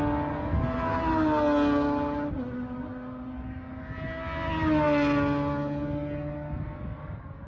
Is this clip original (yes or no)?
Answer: yes